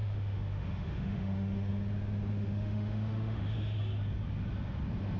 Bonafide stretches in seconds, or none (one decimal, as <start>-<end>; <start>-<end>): 1.7-2.3; 3.8-5.2

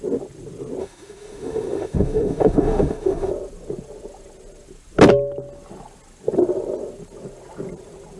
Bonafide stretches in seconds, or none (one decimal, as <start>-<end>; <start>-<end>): 0.0-0.8; 3.3-8.2

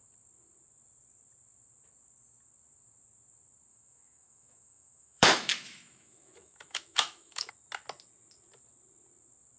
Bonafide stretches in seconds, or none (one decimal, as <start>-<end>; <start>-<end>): 0.0-3.7; 7.5-9.6

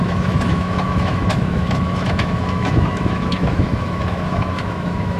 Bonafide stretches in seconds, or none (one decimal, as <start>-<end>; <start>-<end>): none

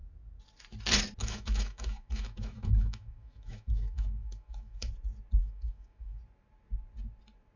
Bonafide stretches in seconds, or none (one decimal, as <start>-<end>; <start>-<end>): 0.0-1.2; 4.9-5.4; 6.2-7.6

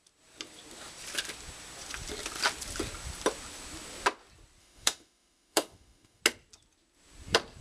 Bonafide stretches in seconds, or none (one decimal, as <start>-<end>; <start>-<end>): 0.0-4.6; 6.2-7.6